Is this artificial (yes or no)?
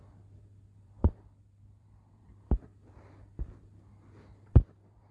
yes